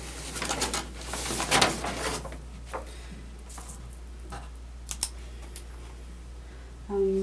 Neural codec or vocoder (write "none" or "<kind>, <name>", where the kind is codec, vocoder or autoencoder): none